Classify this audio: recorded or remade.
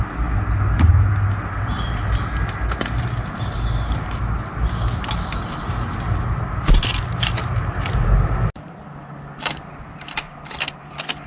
recorded